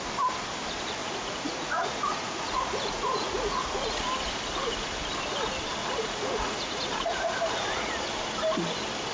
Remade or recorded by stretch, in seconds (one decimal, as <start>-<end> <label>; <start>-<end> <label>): 0.0-1.0 recorded; 1.0-4.0 remade; 4.0-5.8 recorded; 5.8-7.9 remade; 7.9-9.1 recorded